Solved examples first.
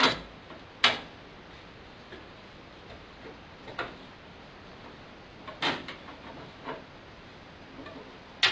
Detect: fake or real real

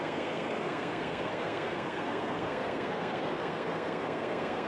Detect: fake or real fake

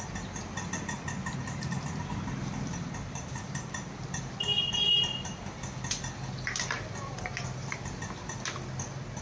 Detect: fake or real real